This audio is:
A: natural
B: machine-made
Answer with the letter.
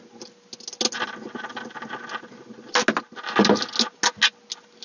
A